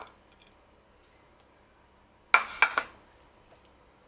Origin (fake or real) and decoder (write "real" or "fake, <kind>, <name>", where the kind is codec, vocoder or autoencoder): real